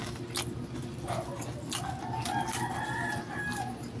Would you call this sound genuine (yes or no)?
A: yes